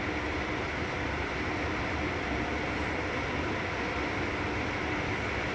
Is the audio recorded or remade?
recorded